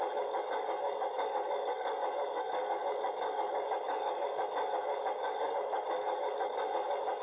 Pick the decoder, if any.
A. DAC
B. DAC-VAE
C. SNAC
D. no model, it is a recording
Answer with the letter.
A